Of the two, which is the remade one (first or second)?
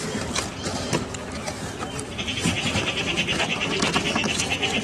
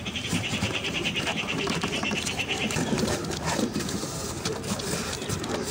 second